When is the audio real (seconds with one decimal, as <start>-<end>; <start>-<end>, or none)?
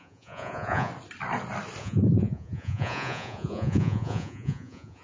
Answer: 0.9-1.8